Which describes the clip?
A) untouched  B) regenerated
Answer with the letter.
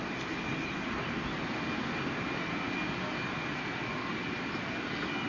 A